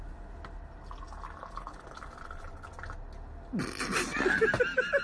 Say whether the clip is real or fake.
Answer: real